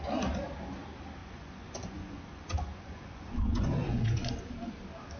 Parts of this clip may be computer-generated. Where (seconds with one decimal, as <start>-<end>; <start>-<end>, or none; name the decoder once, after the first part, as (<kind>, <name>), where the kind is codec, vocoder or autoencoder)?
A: 1.2-4.3 (vocoder, Vocos)